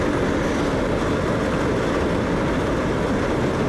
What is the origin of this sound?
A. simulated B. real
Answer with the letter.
B